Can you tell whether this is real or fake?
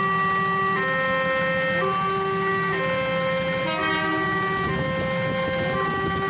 real